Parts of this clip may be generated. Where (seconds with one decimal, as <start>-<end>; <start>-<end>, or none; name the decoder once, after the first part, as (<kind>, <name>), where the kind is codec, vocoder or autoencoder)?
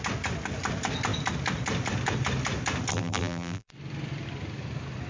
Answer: 2.9-3.7 (vocoder, BigVGAN v2)